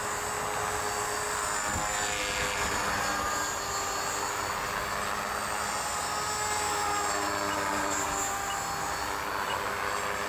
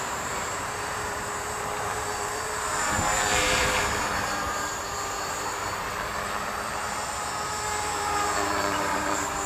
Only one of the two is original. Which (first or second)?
first